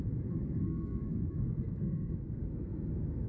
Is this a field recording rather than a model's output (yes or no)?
no